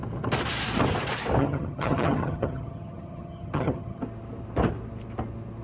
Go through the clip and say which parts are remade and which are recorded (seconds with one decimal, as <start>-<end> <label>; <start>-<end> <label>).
0.0-1.4 recorded; 1.4-4.0 remade; 4.0-5.6 recorded